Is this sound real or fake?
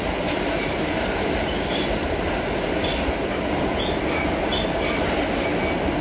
real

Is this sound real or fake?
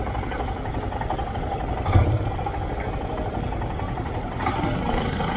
real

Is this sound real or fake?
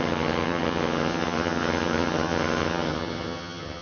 fake